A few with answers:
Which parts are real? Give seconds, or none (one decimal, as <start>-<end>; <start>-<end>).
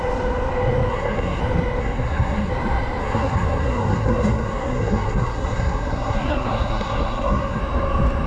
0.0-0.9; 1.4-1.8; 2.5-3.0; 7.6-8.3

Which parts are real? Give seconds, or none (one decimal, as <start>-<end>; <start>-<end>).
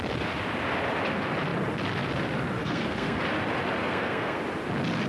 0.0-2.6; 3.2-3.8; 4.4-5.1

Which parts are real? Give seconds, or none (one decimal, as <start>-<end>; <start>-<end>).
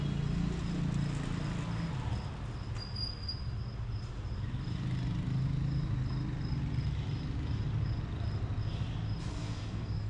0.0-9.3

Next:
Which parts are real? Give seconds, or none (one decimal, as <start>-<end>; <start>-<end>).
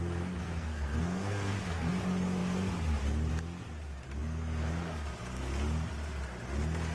0.0-0.4; 1.9-6.9